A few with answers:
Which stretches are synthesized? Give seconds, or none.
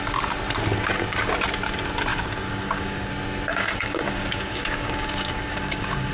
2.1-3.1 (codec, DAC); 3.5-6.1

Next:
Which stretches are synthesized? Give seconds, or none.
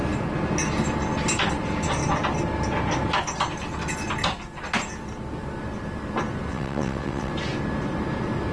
6.5-7.3 (vocoder, WaveNeXt)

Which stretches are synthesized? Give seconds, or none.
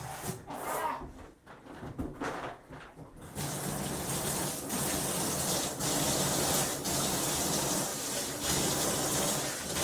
0.0-7.9 (vocoder, BigVGAN v2); 8.8-9.8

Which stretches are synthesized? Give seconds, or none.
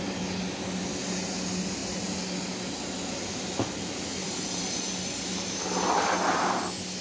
4.2-4.9 (vocoder, BigVGAN v2)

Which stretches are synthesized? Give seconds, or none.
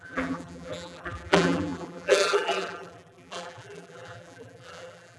0.0-5.2 (vocoder, BigVGAN v2)